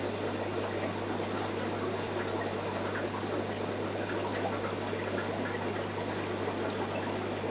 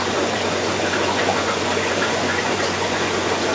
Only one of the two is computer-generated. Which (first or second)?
second